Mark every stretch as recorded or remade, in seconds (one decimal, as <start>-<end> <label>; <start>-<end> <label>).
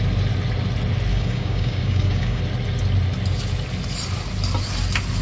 0.0-1.1 recorded; 1.1-2.4 remade; 2.4-5.2 recorded